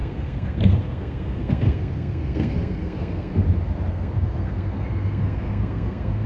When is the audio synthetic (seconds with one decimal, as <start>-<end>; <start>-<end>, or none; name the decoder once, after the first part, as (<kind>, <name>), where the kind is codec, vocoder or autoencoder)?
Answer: 0.0-3.3 (codec, SNAC); 3.9-6.3